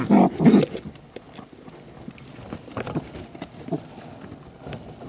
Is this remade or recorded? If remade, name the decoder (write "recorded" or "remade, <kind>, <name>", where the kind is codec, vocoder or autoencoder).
recorded